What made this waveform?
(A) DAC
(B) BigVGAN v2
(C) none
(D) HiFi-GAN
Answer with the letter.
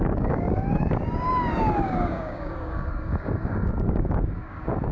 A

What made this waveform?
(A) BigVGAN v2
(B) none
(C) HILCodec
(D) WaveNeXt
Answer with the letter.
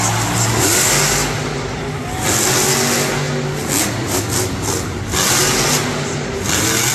B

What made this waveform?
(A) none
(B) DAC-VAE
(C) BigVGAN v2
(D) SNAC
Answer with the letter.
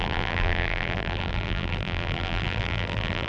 C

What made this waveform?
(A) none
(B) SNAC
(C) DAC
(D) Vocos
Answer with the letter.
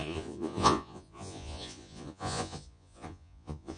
D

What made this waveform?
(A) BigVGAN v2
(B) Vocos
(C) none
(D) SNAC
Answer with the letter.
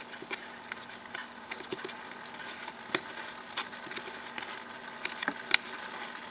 C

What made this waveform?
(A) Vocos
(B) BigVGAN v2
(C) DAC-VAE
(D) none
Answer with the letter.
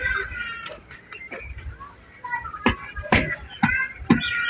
B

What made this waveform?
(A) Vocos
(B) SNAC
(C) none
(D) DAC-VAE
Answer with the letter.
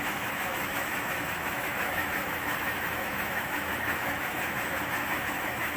D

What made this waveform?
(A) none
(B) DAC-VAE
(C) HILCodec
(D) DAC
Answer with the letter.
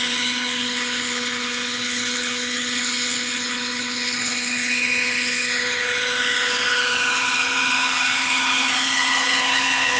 C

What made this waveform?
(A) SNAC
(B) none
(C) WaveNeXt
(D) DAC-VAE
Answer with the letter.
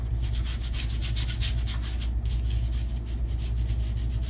B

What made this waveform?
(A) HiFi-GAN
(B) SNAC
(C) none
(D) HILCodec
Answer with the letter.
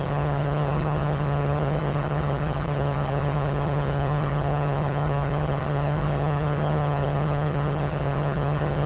A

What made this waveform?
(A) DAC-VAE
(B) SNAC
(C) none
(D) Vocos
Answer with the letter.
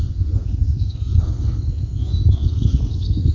B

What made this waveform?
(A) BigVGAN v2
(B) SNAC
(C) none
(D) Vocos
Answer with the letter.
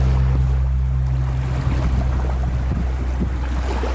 C